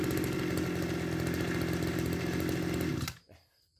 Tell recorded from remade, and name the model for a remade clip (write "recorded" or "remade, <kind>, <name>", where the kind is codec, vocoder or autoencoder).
recorded